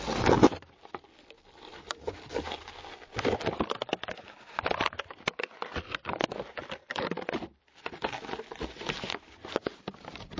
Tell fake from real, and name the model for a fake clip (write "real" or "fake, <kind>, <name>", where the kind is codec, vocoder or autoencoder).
real